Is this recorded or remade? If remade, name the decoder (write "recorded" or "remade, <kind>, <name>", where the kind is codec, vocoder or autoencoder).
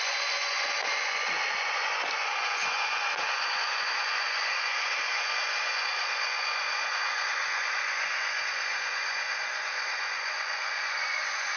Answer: remade, vocoder, Vocos